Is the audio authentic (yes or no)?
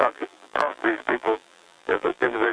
no